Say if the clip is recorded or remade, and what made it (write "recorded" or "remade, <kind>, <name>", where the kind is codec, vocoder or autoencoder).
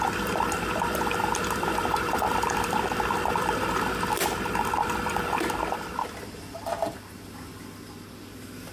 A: remade, vocoder, BigVGAN v2